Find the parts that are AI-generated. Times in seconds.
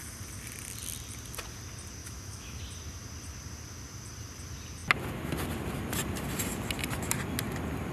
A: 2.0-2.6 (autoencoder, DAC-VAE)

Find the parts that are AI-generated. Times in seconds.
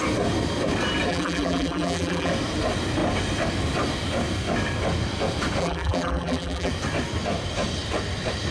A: 1.1-2.3 (vocoder, BigVGAN v2); 5.6-6.7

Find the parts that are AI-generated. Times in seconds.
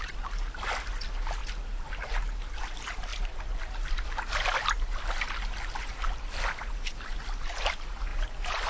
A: none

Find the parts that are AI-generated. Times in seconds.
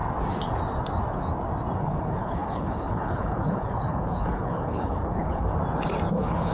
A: 1.8-5.5 (codec, HILCodec); 6.1-6.5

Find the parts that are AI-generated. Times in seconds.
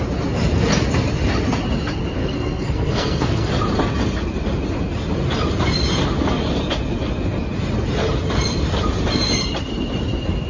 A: 2.2-3.5 (codec, SNAC)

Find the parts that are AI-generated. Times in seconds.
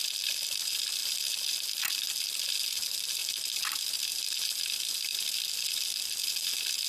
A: none